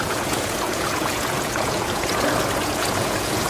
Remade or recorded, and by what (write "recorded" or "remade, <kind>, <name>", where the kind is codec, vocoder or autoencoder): remade, vocoder, Vocos